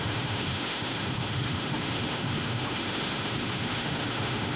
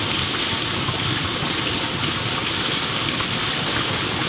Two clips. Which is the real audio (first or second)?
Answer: second